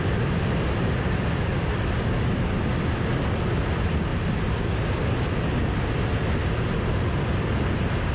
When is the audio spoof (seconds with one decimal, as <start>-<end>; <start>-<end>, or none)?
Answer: none